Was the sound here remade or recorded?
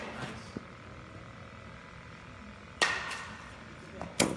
recorded